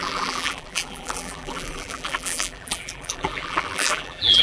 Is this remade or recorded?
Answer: remade